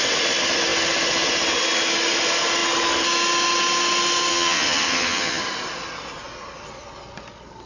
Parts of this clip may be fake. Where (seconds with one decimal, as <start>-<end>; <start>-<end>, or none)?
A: 4.3-5.4